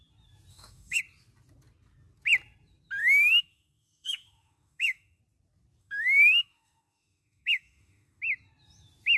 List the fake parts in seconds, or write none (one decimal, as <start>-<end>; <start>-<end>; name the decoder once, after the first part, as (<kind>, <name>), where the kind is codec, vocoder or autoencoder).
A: 0.5-1.0 (autoencoder, DAC-VAE); 3.0-5.2; 5.8-8.2